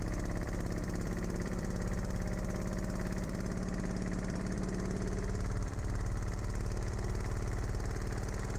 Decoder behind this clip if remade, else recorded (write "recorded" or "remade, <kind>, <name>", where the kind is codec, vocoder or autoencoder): remade, vocoder, BigVGAN v2